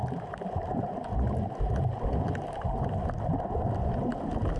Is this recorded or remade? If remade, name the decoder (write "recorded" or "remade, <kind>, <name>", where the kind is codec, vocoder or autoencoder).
recorded